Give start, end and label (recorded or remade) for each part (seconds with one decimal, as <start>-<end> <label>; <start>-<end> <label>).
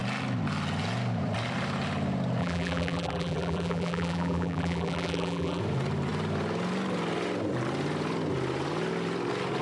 0.0-2.4 recorded; 2.4-5.6 remade; 5.6-9.6 recorded